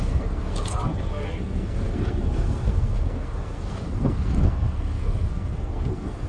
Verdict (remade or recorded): remade